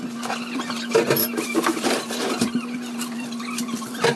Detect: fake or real fake